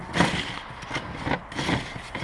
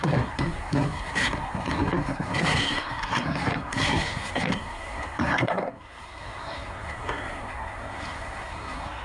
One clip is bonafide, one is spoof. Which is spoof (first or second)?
second